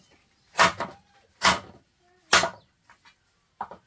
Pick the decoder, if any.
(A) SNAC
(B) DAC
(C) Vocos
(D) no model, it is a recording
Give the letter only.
D